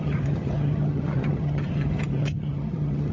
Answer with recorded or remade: remade